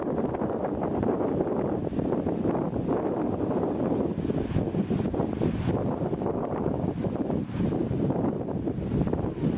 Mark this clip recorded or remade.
recorded